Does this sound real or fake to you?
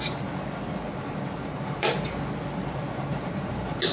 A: real